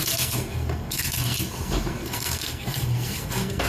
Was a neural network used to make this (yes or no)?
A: yes